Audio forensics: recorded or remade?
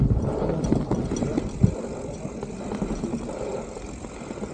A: recorded